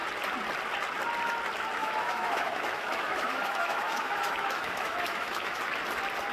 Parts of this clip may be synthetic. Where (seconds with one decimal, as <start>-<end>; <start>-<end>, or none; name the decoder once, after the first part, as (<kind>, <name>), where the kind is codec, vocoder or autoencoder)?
1.8-5.6 (autoencoder, DAC-VAE)